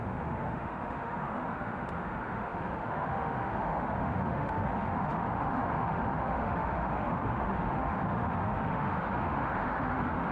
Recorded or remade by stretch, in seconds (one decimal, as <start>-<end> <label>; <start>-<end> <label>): 0.0-10.3 remade

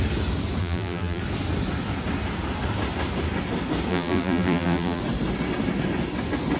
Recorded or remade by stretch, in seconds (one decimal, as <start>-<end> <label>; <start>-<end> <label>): 0.0-0.6 recorded; 0.6-1.2 remade; 1.2-3.9 recorded; 3.9-5.0 remade; 5.0-6.6 recorded

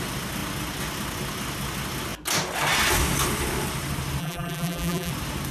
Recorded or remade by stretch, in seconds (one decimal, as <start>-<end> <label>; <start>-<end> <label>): 0.0-4.2 recorded; 4.2-5.1 remade; 5.1-5.5 recorded

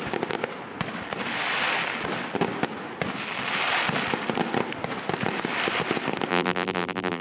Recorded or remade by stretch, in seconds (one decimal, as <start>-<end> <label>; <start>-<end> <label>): 0.0-6.3 recorded; 6.3-7.2 remade

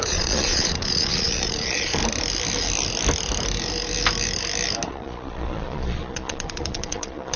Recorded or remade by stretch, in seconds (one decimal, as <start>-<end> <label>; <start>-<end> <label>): 0.0-2.0 remade; 2.0-4.9 recorded; 4.9-7.4 remade

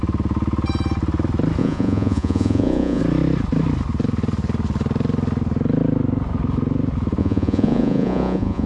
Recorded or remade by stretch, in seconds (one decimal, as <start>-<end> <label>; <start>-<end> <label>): 0.0-1.6 recorded; 1.6-3.0 remade; 3.0-7.2 recorded; 7.2-8.7 remade

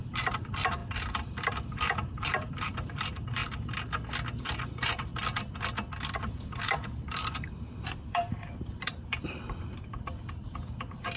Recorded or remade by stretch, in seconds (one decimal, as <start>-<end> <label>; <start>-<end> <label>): 0.0-3.4 remade; 3.4-4.4 recorded; 4.4-5.1 remade; 5.1-6.0 recorded; 6.0-11.2 remade

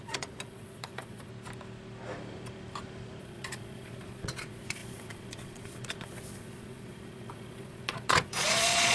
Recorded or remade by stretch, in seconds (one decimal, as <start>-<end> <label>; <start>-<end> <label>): 0.0-1.3 remade; 1.3-3.2 recorded; 3.2-8.9 remade